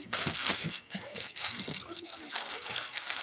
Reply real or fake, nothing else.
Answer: fake